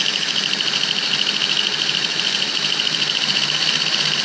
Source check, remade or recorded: recorded